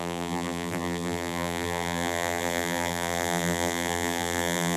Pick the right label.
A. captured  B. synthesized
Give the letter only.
B